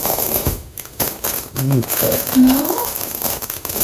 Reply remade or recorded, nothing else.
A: remade